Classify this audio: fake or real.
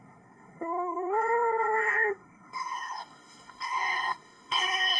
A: fake